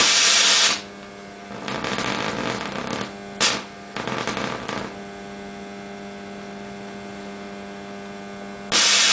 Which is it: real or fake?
real